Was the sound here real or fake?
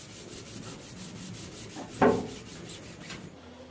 real